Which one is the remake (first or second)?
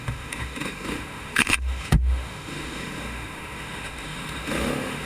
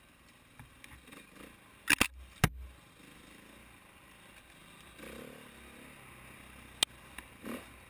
first